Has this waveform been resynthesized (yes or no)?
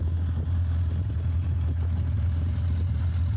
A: no